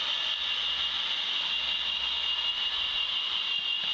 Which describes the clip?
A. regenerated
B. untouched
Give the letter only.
B